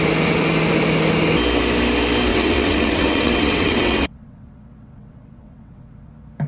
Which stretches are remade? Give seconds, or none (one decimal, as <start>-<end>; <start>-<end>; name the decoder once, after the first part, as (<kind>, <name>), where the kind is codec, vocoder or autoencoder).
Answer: 2.3-6.1 (vocoder, WaveNeXt)

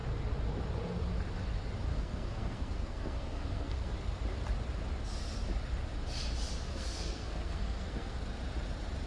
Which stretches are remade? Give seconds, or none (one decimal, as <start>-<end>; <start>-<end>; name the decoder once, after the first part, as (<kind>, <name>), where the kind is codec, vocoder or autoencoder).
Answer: 1.9-3.9 (codec, SNAC); 6.7-8.2

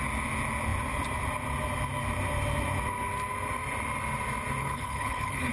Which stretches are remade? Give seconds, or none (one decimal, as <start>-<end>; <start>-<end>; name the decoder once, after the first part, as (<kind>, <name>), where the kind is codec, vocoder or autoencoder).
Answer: 4.6-5.5 (codec, HILCodec)

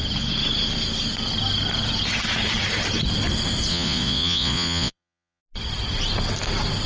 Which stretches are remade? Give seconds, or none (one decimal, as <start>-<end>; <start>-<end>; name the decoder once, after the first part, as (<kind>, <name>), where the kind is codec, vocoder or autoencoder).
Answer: 3.7-5.4 (vocoder, Vocos)

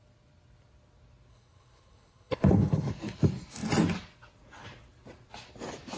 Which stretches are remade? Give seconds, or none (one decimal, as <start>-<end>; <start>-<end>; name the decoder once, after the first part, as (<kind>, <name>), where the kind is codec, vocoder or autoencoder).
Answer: 1.3-2.9 (codec, HILCodec)

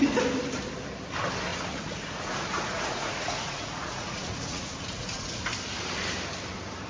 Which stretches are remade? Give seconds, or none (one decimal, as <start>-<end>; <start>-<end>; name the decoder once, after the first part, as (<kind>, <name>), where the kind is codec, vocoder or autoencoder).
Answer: 1.5-5.4 (vocoder, Vocos)

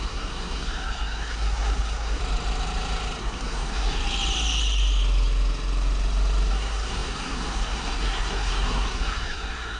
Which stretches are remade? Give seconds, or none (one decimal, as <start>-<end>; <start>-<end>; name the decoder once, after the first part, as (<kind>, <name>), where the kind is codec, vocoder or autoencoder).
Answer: 0.0-2.2 (codec, SNAC); 3.2-4.0; 6.5-9.8